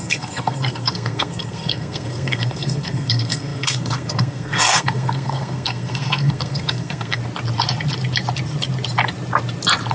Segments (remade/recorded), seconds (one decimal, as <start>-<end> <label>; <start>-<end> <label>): 0.0-7.2 remade; 7.2-9.9 recorded